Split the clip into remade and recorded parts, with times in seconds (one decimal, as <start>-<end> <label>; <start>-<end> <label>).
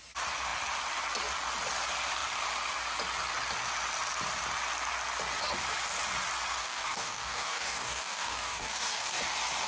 0.0-6.6 recorded; 6.6-9.2 remade; 9.2-9.7 recorded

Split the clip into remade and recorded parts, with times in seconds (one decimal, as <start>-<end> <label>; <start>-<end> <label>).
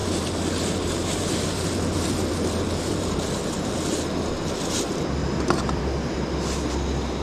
0.0-3.7 remade; 3.7-5.2 recorded; 5.2-5.8 remade; 5.8-7.2 recorded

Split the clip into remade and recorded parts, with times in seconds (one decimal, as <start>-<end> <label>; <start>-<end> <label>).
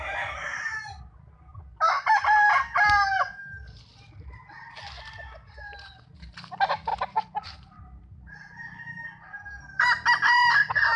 0.0-6.9 recorded; 6.9-9.6 remade; 9.6-11.0 recorded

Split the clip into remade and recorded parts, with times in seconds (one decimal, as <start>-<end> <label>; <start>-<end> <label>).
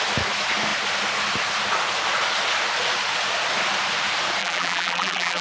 0.0-4.4 recorded; 4.4-5.4 remade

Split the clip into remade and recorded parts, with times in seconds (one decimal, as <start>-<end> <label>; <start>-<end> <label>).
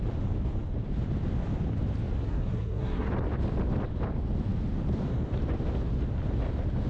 0.0-2.2 recorded; 2.2-3.1 remade; 3.1-6.9 recorded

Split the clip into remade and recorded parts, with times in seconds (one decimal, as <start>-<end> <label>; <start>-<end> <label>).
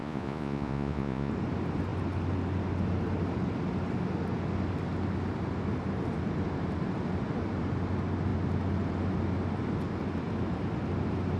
0.0-1.3 remade; 1.3-11.4 recorded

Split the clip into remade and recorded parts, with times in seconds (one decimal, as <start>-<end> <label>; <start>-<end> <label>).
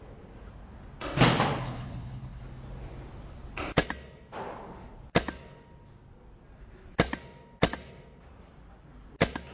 0.0-1.6 recorded; 1.6-2.4 remade; 2.4-9.5 recorded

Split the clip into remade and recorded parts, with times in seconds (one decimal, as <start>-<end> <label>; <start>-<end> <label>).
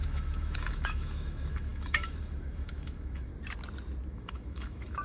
0.0-3.3 remade; 3.3-4.1 recorded; 4.1-5.0 remade